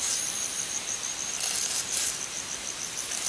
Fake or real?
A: real